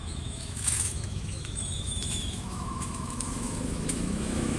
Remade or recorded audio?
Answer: remade